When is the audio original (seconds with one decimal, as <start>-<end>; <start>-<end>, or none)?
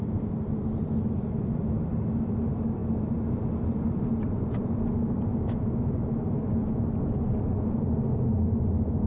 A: 0.0-5.3; 6.0-9.1